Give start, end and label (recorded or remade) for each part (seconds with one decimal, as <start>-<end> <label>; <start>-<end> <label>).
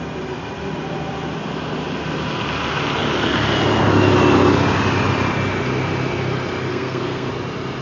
0.0-6.7 recorded; 6.7-7.3 remade; 7.3-7.8 recorded